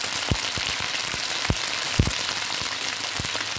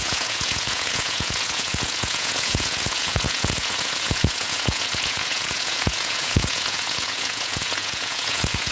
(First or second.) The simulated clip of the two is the second